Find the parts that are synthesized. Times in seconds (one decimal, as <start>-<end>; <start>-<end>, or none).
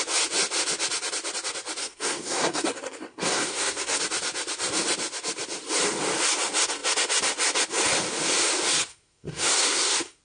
1.8-4.0; 8.9-10.2